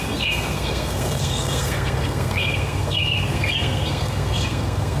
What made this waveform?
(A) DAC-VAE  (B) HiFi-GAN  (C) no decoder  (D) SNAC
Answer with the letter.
D